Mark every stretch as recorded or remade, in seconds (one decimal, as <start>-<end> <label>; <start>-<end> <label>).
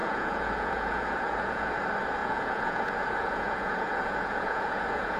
0.0-1.7 remade; 1.7-2.2 recorded; 2.2-5.2 remade